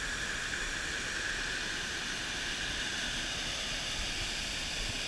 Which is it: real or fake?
real